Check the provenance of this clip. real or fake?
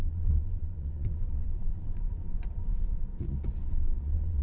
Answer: fake